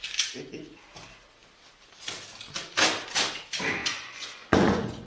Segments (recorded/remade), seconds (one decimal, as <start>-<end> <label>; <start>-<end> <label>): 0.0-3.8 recorded; 3.8-5.1 remade